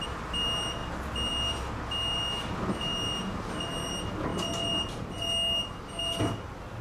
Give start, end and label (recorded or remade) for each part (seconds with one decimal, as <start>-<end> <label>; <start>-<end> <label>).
0.0-6.8 recorded

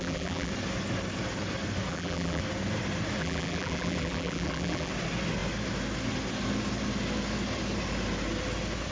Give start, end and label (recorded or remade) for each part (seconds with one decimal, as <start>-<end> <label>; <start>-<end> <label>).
0.0-0.5 remade; 0.5-1.9 recorded; 1.9-2.4 remade; 2.4-3.2 recorded; 3.2-4.9 remade; 4.9-8.9 recorded

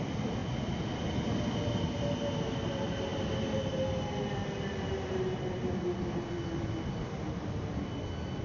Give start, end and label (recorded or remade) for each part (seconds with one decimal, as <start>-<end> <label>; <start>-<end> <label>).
0.0-8.4 recorded

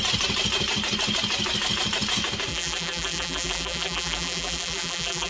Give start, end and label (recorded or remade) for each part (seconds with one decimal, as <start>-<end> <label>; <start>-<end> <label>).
0.0-2.5 recorded; 2.5-5.3 remade